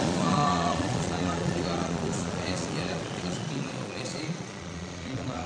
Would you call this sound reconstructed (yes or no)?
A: yes